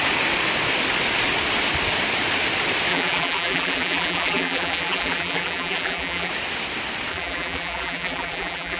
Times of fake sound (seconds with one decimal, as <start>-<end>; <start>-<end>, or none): 2.9-6.3; 7.1-8.8